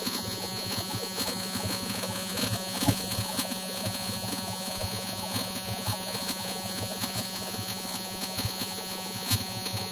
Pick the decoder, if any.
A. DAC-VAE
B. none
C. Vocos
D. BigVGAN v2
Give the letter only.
C